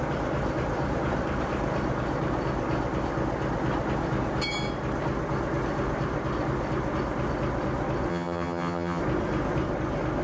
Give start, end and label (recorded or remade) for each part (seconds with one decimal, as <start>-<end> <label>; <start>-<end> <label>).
0.0-8.1 recorded; 8.1-9.0 remade; 9.0-10.2 recorded